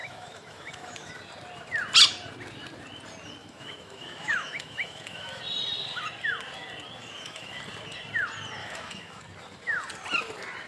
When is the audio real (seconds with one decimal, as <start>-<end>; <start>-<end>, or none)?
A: 1.1-3.4; 5.4-7.0; 7.6-8.6; 9.2-10.7